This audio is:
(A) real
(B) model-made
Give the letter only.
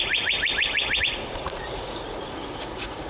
B